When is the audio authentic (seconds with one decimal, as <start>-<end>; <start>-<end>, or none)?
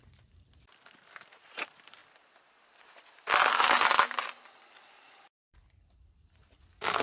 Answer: 2.0-4.9